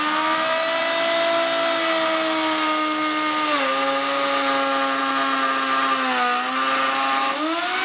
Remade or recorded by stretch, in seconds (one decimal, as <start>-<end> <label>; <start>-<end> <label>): 0.0-7.8 recorded